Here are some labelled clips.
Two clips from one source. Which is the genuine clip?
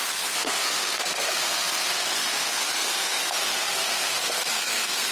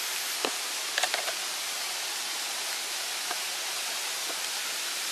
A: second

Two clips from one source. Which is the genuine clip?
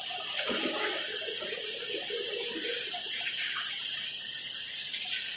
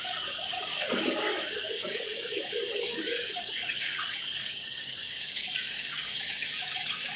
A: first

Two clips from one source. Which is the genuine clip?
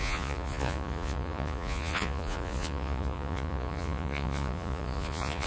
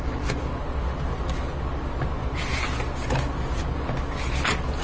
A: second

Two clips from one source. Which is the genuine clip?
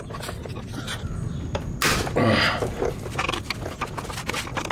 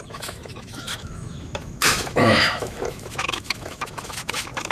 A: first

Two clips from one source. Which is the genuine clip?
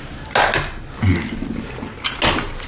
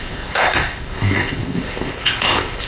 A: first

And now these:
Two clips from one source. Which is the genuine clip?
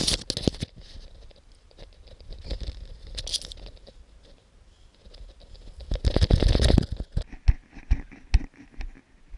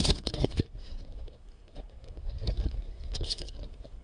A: first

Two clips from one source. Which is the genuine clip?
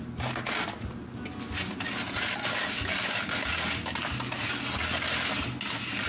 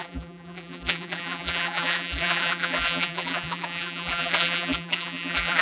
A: first